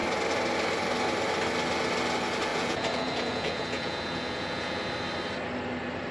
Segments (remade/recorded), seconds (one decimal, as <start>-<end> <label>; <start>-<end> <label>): 0.0-2.5 recorded; 2.5-4.9 remade; 4.9-6.1 recorded